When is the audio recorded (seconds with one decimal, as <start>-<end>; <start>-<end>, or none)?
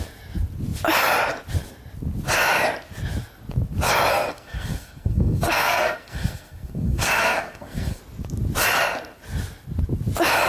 0.0-4.1; 8.0-10.5